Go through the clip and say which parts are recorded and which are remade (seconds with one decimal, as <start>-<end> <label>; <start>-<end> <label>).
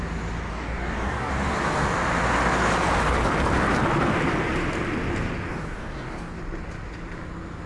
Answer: 0.0-0.5 recorded; 0.5-1.3 remade; 1.3-5.5 recorded; 5.5-6.4 remade; 6.4-7.7 recorded